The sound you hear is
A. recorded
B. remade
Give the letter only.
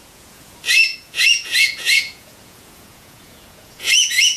B